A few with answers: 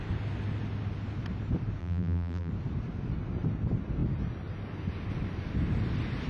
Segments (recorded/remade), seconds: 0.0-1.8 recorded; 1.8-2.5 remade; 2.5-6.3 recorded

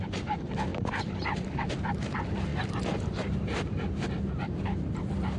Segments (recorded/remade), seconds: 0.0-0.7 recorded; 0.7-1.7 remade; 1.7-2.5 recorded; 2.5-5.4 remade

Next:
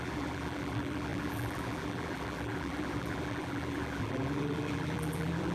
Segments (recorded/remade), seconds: 0.0-5.5 remade

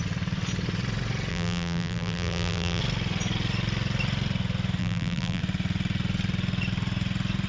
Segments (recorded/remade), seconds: 0.0-1.3 recorded; 1.3-2.8 remade; 2.8-4.8 recorded; 4.8-5.4 remade; 5.4-7.5 recorded